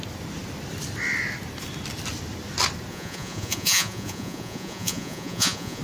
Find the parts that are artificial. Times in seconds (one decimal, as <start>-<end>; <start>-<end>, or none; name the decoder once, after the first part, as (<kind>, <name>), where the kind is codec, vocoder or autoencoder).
2.9-5.8 (vocoder, Vocos)